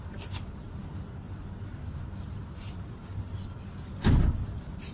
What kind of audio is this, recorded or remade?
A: recorded